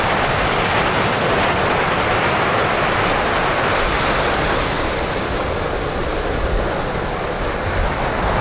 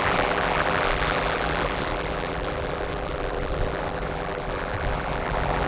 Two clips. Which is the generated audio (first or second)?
second